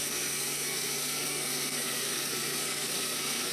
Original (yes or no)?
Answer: no